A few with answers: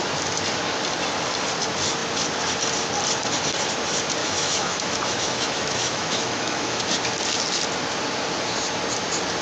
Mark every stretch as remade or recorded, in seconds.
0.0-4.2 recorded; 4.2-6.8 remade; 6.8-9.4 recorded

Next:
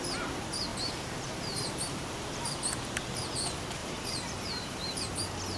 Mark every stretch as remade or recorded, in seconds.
0.0-0.7 recorded; 0.7-3.0 remade; 3.0-3.8 recorded; 3.8-5.0 remade; 5.0-5.6 recorded

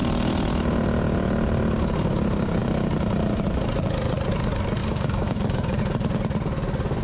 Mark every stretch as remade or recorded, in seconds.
0.0-4.8 recorded; 4.8-5.8 remade; 5.8-7.0 recorded

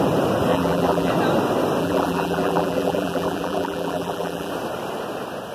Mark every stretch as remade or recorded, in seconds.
0.0-0.5 recorded; 0.5-1.1 remade; 1.1-1.8 recorded; 1.8-4.5 remade; 4.5-5.5 recorded

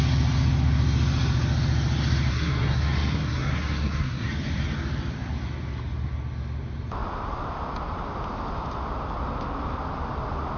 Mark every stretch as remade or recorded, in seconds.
0.0-2.3 recorded; 2.3-4.3 remade; 4.3-10.6 recorded

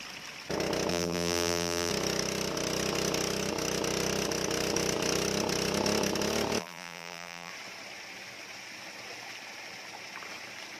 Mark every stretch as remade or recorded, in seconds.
0.0-0.9 recorded; 0.9-1.9 remade; 1.9-6.6 recorded; 6.6-7.5 remade; 7.5-10.8 recorded

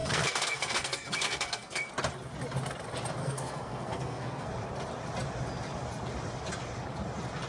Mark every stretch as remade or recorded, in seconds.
0.0-1.9 remade; 1.9-3.2 recorded; 3.2-4.5 remade; 4.5-7.5 recorded